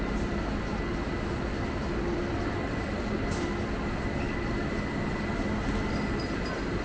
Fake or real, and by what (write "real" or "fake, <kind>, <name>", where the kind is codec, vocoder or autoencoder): real